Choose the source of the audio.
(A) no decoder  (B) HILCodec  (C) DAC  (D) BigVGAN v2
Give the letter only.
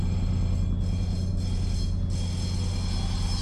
A